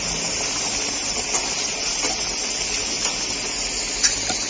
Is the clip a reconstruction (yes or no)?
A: no